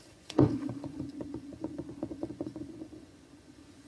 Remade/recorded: remade